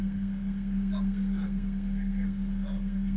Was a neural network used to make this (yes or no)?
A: yes